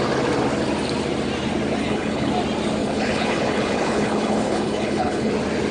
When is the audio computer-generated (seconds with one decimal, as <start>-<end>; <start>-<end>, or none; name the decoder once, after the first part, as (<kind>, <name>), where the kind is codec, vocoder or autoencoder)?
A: 1.8-2.3 (codec, HILCodec); 2.8-5.3